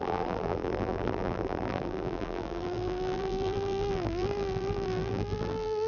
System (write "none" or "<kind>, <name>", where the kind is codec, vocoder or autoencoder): vocoder, BigVGAN v2